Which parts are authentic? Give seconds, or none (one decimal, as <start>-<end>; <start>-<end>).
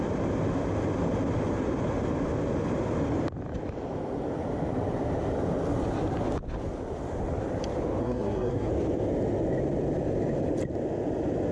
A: 0.0-8.0; 8.7-11.5